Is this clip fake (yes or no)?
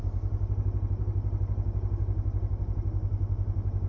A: no